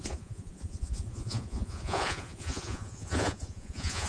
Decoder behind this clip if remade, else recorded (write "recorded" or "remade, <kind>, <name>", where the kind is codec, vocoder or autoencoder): remade, vocoder, Vocos